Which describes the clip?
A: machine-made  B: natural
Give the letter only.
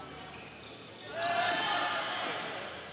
B